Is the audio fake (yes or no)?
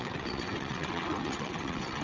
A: yes